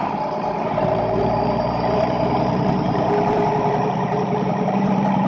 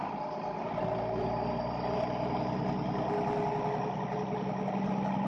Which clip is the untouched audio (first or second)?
second